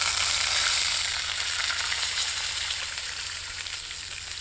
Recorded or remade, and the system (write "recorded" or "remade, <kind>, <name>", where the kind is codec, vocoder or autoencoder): remade, vocoder, BigVGAN v2